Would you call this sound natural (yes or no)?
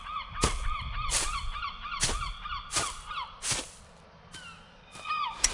yes